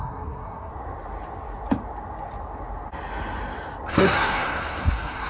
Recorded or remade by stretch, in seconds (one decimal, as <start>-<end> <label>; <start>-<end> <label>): 0.0-0.7 remade; 0.7-3.9 recorded; 3.9-5.3 remade